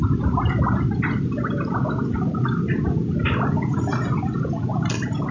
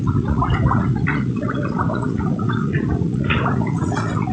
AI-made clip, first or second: second